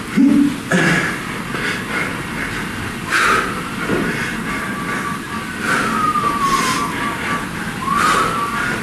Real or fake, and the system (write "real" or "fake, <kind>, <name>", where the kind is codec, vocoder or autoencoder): real